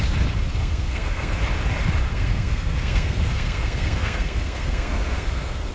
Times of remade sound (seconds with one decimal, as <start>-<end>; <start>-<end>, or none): 0.6-1.4; 2.1-5.7